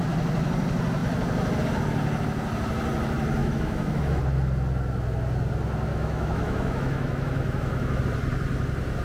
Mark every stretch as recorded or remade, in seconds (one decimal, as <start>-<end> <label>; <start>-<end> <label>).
0.0-3.4 recorded; 3.4-4.2 remade; 4.2-5.9 recorded; 5.9-8.0 remade; 8.0-9.0 recorded